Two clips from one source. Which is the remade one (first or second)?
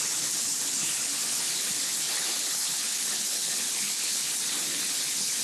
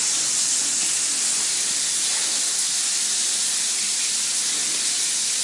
first